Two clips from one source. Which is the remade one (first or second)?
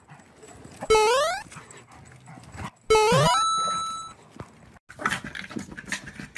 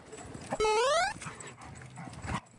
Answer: second